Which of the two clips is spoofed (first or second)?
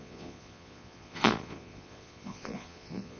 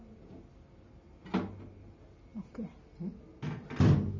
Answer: first